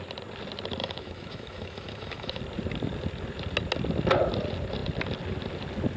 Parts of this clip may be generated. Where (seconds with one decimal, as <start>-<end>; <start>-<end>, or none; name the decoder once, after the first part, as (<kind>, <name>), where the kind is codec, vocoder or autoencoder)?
0.8-2.4 (autoencoder, DAC-VAE)